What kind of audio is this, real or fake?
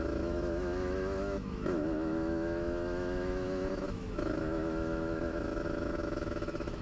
fake